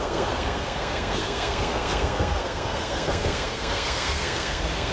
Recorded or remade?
remade